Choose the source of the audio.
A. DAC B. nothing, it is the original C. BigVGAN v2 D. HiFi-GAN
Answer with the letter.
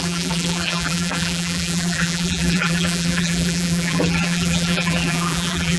C